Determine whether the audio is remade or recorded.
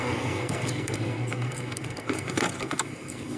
remade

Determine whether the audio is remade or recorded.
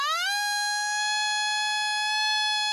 recorded